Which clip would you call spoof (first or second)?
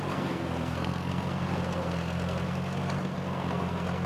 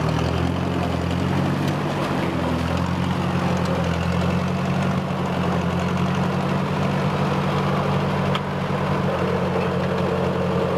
first